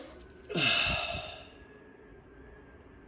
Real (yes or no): yes